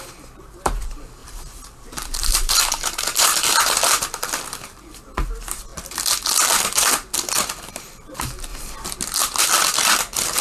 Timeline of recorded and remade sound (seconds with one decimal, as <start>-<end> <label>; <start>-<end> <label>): 0.0-8.5 remade; 8.5-9.4 recorded; 9.4-10.4 remade